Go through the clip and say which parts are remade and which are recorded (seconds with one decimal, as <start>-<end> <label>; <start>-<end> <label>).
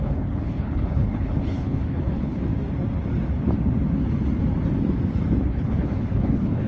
0.0-2.4 remade; 2.4-5.4 recorded; 5.4-6.7 remade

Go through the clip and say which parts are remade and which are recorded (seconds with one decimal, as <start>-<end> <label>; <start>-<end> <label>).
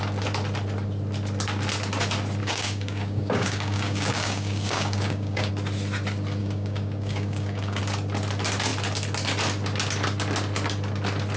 0.0-2.4 recorded; 2.4-5.5 remade; 5.5-6.4 recorded; 6.4-7.8 remade; 7.8-11.4 recorded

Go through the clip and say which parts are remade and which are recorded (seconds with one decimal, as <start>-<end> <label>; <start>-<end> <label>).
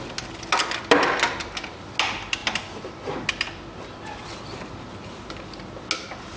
0.0-6.4 recorded